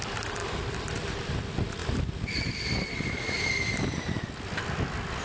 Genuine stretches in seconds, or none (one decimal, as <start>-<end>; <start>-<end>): 0.0-5.2